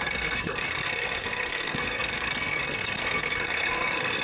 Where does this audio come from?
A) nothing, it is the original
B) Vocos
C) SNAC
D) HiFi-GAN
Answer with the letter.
C